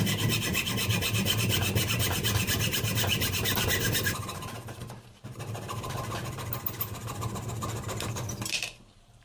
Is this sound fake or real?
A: real